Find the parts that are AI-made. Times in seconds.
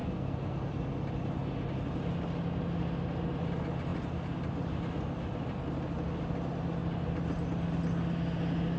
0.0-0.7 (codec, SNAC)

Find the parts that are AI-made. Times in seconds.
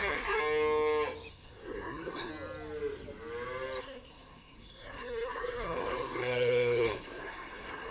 0.0-0.4 (codec, SNAC); 1.3-2.3; 3.8-7.9